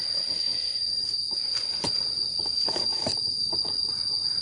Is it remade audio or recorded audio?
remade